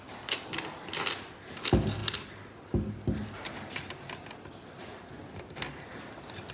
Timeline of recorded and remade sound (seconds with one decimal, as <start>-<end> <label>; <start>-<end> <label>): 0.0-6.5 recorded